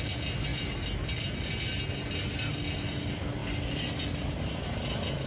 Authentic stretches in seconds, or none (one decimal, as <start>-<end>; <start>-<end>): 0.0-5.3